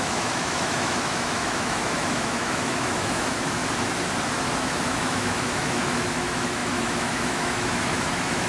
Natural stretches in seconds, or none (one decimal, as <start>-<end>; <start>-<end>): 3.6-4.6